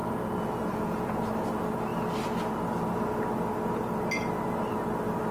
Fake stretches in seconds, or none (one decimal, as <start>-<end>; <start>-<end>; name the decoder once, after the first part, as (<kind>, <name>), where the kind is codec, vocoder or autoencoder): 0.0-1.3 (vocoder, Vocos)